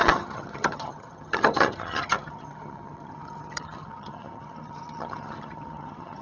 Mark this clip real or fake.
fake